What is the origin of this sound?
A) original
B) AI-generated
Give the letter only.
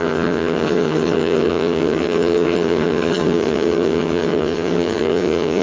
B